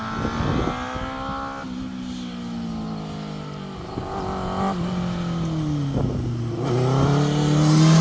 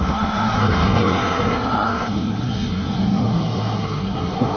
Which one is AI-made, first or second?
second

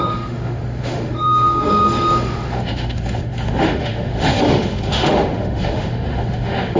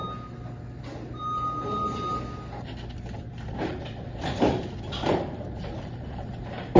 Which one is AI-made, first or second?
first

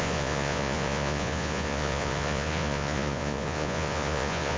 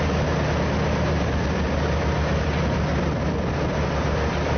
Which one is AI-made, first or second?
first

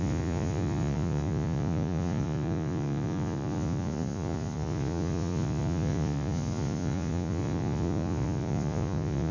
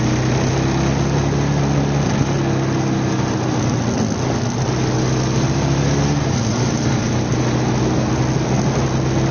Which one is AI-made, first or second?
first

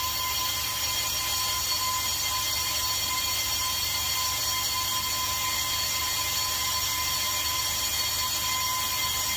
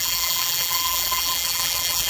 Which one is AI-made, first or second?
second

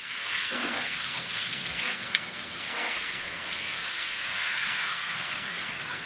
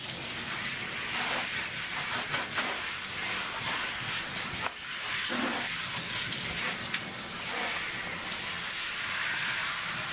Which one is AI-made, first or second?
first